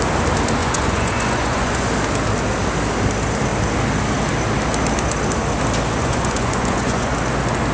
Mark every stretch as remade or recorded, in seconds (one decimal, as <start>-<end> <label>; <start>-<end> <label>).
0.0-0.6 recorded; 0.6-1.9 remade; 1.9-6.0 recorded; 6.0-7.1 remade; 7.1-7.7 recorded